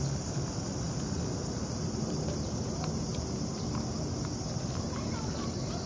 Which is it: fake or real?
real